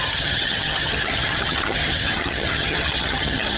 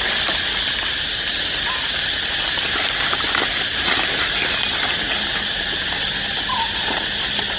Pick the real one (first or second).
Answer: second